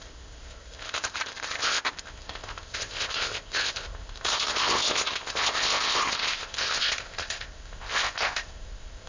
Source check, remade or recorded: remade